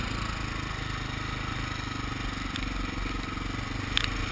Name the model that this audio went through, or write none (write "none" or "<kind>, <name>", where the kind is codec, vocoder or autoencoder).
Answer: none